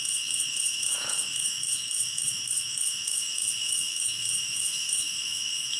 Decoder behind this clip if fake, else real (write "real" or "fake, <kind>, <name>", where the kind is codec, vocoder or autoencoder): fake, autoencoder, DAC-VAE